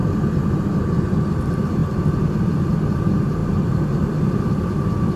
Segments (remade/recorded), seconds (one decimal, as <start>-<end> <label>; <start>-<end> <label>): 0.0-3.4 recorded; 3.4-4.2 remade; 4.2-5.2 recorded